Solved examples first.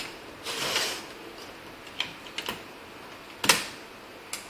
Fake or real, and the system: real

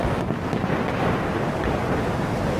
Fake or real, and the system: real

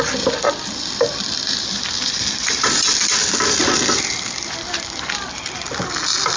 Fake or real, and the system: fake, vocoder, BigVGAN v2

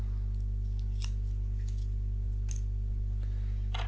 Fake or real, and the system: real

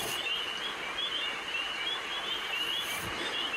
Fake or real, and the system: fake, vocoder, BigVGAN v2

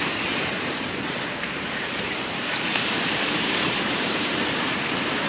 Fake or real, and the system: fake, vocoder, BigVGAN v2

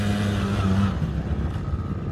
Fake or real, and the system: real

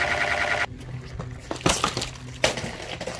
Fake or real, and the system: real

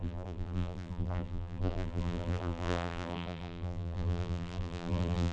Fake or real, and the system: fake, vocoder, BigVGAN v2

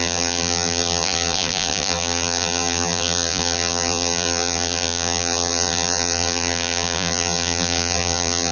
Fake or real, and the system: fake, vocoder, BigVGAN v2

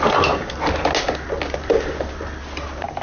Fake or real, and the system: real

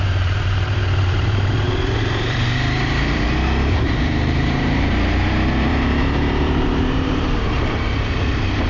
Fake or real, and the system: fake, vocoder, BigVGAN v2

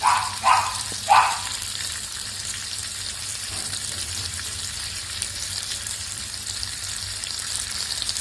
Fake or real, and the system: fake, vocoder, BigVGAN v2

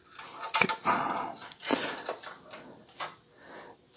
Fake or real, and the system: real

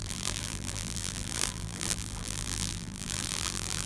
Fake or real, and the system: fake, vocoder, BigVGAN v2